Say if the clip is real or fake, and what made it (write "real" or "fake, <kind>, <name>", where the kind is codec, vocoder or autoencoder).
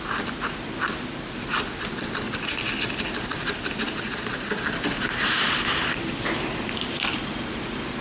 real